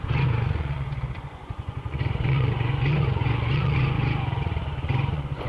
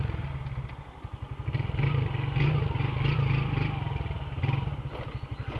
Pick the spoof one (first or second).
first